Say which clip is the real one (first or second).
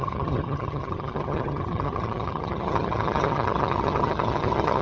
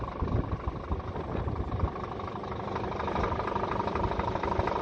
second